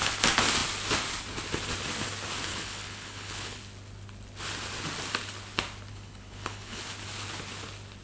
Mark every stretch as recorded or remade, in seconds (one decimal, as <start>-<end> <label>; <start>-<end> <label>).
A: 0.0-2.5 recorded; 2.5-3.6 remade; 3.6-5.9 recorded; 5.9-6.8 remade; 6.8-8.0 recorded